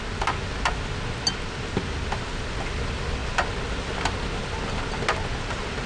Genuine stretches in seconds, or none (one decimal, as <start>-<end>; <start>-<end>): 0.0-5.9